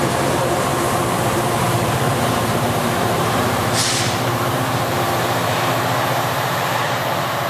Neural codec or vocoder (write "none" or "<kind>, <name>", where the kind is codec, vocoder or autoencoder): vocoder, BigVGAN v2